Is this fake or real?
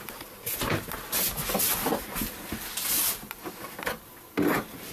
real